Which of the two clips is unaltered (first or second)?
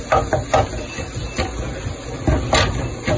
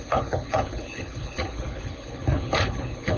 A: first